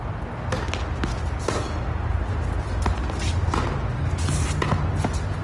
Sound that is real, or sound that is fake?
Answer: real